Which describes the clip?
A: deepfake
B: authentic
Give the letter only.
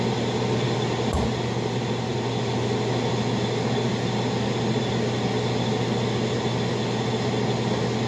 B